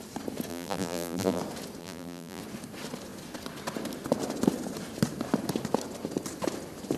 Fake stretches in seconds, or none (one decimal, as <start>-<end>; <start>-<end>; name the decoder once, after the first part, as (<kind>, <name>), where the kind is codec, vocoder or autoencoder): 0.5-1.4 (vocoder, BigVGAN v2); 1.8-2.4

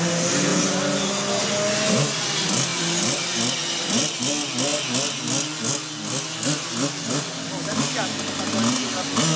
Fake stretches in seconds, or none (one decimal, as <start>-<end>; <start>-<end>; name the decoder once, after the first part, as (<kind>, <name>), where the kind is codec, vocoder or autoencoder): 2.7-4.2 (vocoder, BigVGAN v2)

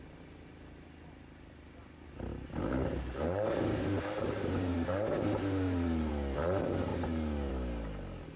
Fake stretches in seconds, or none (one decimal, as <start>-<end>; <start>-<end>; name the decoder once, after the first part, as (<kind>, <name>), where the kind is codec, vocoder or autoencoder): 2.3-6.1 (vocoder, BigVGAN v2)

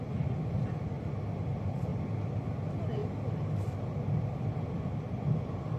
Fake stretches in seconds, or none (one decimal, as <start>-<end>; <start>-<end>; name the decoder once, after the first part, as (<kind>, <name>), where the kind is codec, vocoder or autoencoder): 0.0-1.9 (vocoder, BigVGAN v2); 2.5-3.0; 4.9-5.8

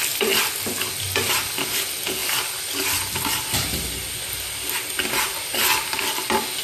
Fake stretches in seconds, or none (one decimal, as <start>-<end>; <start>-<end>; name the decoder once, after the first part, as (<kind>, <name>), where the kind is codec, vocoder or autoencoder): none

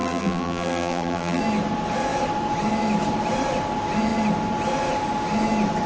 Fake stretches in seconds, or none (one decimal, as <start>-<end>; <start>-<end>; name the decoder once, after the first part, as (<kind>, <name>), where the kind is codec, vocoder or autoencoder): 0.0-1.4 (vocoder, BigVGAN v2)

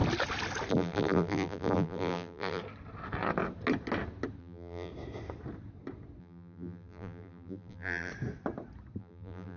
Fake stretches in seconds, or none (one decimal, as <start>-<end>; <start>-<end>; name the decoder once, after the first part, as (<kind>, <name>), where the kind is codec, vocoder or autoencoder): 0.7-2.6 (vocoder, BigVGAN v2); 4.4-4.9; 6.2-8.1; 9.0-9.6